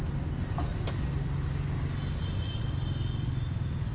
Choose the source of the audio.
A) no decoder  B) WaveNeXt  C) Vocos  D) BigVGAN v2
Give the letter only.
A